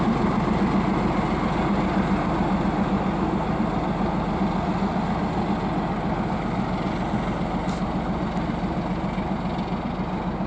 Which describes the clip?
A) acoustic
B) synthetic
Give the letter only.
A